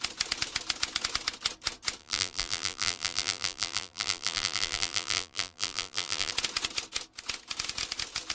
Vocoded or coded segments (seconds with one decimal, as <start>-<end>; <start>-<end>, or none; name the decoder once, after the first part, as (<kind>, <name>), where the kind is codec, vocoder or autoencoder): 2.0-6.3 (vocoder, BigVGAN v2)